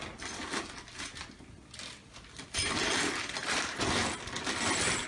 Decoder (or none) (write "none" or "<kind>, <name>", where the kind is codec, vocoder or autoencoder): none